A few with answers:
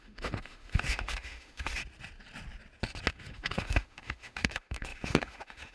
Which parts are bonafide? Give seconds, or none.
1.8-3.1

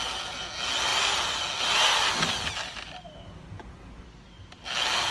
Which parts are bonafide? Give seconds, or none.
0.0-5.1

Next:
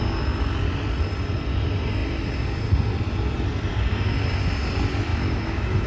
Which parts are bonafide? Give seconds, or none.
0.0-5.1